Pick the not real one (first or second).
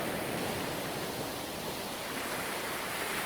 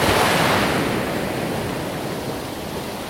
first